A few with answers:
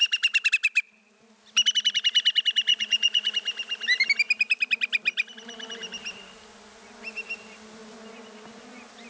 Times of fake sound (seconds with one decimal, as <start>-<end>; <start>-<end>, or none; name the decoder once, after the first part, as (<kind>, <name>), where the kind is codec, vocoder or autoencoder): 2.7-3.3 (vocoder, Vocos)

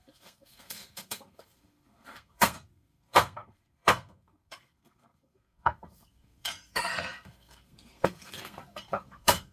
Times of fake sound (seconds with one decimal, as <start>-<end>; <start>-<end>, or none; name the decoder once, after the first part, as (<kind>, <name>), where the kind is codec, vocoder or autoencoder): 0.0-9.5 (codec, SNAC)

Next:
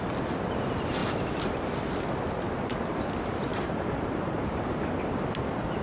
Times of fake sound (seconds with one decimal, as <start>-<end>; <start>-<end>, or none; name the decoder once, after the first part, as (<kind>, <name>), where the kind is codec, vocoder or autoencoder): 3.5-4.7 (vocoder, BigVGAN v2)

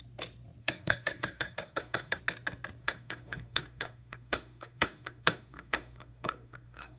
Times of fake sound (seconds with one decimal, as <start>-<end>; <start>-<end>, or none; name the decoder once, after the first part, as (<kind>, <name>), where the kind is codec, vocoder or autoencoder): 0.6-2.2 (codec, SNAC); 2.8-7.0

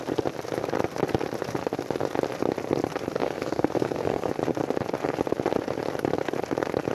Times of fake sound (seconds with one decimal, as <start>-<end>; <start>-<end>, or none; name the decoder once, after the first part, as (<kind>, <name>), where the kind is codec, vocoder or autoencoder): 3.2-4.3 (codec, SNAC)

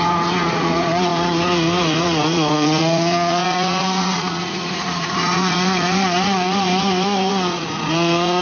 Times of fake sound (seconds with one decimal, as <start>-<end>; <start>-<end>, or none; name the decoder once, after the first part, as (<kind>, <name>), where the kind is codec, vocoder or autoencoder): 0.0-8.4 (vocoder, Vocos)

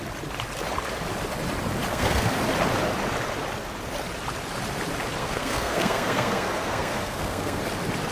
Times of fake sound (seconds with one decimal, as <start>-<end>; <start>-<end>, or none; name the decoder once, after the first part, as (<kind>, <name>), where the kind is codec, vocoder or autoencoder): 1.9-2.4 (codec, SNAC); 5.2-7.6